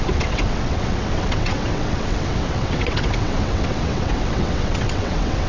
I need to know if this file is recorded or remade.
remade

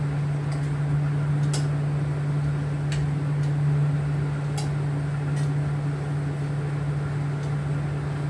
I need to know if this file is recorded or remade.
recorded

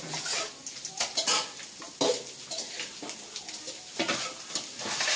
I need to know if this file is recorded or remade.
recorded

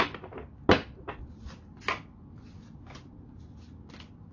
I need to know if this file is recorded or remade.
recorded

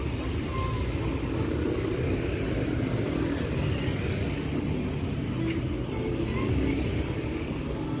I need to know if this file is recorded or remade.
recorded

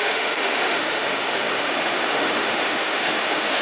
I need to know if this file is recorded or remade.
remade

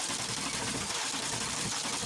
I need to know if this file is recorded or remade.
remade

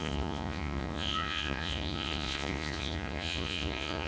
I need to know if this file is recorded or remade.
remade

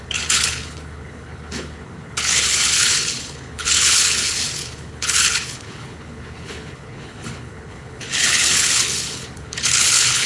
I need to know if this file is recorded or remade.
remade